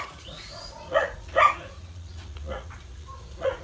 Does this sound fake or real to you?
fake